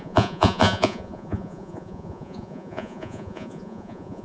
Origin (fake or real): fake